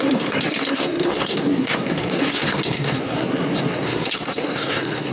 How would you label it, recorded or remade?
remade